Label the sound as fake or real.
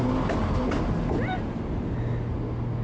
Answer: real